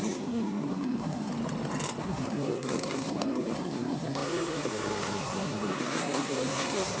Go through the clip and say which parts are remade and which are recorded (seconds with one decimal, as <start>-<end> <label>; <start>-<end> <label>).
0.0-1.3 remade; 1.3-2.0 recorded; 2.0-7.0 remade